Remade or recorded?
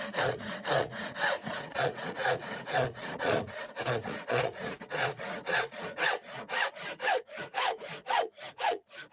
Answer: remade